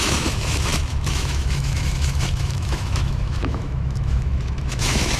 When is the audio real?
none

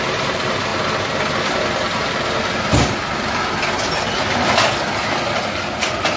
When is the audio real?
0.0-6.2